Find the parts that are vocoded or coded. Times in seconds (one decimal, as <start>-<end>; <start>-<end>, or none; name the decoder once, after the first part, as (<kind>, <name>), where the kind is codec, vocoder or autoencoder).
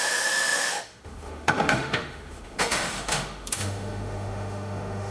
0.0-5.1 (autoencoder, DAC-VAE)